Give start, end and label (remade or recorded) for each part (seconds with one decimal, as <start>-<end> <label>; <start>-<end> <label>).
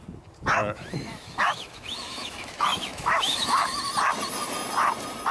0.0-0.6 recorded; 0.6-3.8 remade; 3.8-5.3 recorded